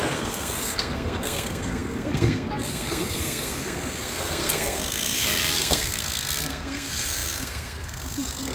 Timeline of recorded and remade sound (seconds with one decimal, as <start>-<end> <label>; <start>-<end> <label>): 0.0-8.5 remade